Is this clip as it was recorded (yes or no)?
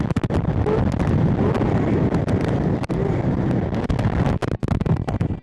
yes